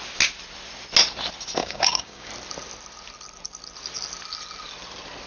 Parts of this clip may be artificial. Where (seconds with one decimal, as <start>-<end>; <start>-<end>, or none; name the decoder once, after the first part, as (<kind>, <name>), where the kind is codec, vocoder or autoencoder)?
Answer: 1.6-2.3 (codec, DAC)